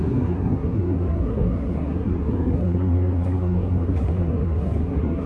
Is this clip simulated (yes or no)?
yes